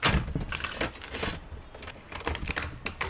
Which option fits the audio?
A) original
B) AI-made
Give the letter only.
A